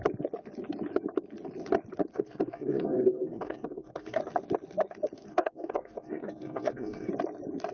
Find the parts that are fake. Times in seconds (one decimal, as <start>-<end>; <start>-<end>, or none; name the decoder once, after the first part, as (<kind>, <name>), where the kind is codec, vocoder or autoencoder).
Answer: 2.1-4.2 (codec, SNAC); 5.3-7.1